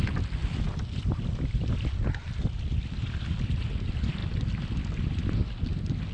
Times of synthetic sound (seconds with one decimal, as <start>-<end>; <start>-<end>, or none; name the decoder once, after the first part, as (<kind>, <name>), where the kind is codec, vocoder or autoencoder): none